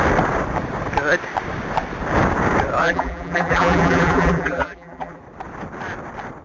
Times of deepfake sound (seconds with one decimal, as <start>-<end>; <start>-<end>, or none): 2.8-5.2